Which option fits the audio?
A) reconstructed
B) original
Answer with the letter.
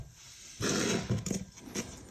B